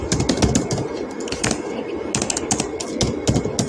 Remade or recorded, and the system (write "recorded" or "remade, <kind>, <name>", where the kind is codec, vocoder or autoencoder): recorded